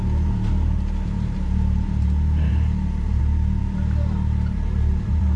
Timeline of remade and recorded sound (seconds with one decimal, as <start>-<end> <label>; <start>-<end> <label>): 0.0-3.2 remade; 3.2-3.6 recorded; 3.6-5.4 remade